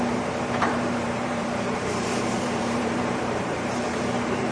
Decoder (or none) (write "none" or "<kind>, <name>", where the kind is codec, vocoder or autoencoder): vocoder, BigVGAN v2